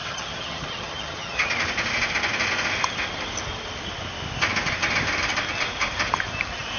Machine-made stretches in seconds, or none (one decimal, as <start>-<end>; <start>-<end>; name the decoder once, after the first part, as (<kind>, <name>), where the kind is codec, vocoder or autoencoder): 0.0-1.5 (vocoder, HiFi-GAN)